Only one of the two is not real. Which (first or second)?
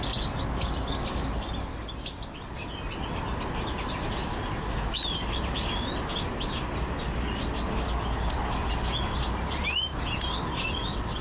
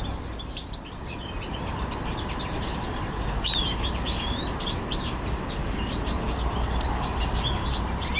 second